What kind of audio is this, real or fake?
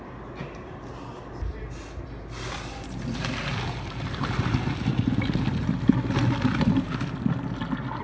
real